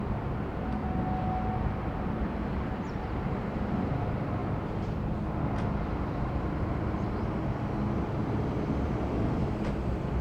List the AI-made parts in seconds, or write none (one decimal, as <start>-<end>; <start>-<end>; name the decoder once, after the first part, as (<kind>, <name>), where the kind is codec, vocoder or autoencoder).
0.0-0.8 (vocoder, BigVGAN v2); 1.9-4.4; 5.4-10.2